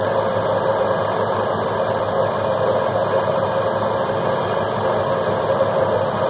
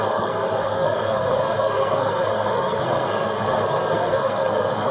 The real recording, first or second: first